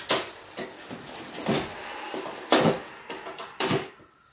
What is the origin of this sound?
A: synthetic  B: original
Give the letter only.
B